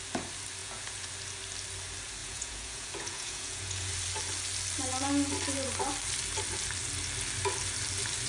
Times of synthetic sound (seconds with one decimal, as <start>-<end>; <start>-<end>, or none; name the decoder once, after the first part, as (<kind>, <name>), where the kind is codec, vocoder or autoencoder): 0.6-1.1 (vocoder, Vocos); 2.2-3.9